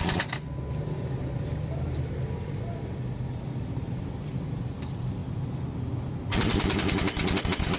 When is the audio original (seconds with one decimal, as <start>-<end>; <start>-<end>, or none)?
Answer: 0.0-7.8